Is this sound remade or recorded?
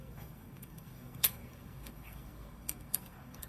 remade